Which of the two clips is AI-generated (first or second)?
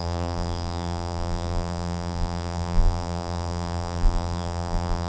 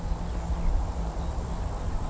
first